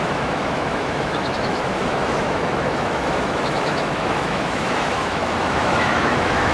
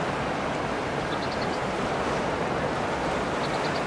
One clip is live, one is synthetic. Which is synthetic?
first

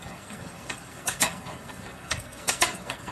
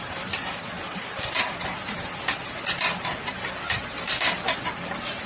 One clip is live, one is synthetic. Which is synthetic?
first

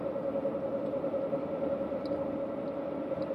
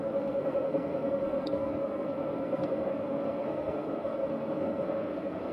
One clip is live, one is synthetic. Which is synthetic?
second